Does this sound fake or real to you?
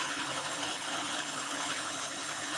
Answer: fake